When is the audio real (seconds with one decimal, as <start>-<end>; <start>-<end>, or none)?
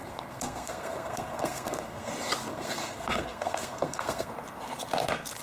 2.1-2.5; 4.3-5.4